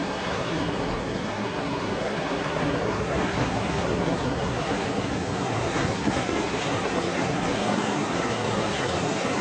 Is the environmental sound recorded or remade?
remade